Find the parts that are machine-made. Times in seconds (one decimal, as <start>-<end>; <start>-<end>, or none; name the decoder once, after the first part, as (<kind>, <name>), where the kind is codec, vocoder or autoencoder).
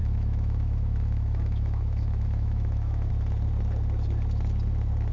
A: 0.0-3.1 (autoencoder, DAC-VAE)